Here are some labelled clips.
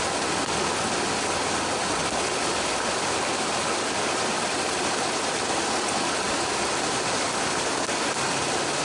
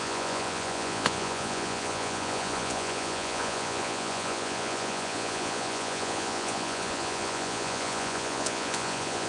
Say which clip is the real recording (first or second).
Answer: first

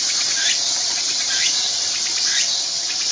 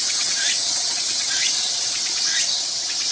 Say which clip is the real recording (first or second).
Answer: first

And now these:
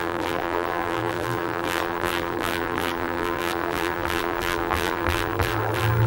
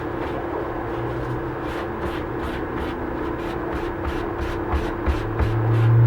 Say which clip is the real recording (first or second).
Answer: second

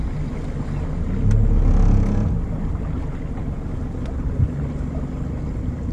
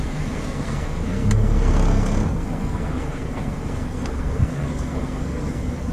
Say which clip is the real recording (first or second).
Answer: first